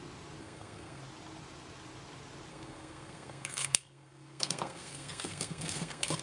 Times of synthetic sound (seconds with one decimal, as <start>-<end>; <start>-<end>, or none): 0.4-1.0; 2.5-6.2